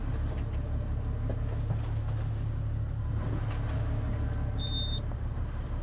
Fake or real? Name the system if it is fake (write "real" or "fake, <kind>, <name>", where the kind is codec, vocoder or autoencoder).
real